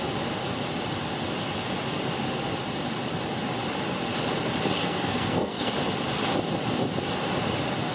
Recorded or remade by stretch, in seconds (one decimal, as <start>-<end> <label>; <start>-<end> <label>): 0.0-4.8 recorded; 4.8-5.7 remade; 5.7-7.9 recorded